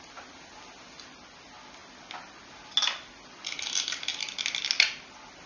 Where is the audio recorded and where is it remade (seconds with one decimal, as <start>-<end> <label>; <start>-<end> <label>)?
0.0-5.5 recorded